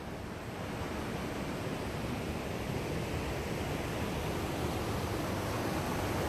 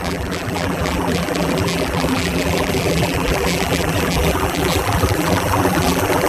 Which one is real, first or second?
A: first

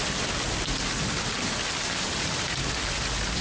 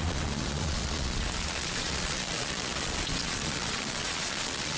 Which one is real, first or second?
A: first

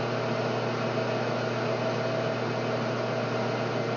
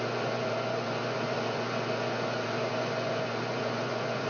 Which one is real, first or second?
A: first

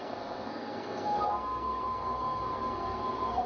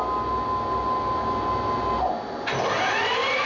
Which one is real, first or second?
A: second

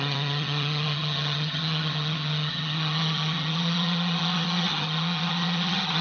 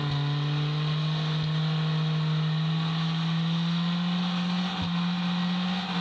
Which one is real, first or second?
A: second